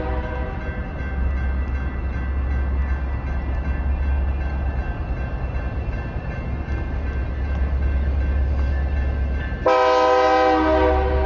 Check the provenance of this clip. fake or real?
real